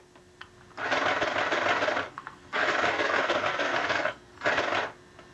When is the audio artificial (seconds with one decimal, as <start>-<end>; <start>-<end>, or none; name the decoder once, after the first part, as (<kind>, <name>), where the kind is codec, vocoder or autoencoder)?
2.1-4.5 (codec, SNAC)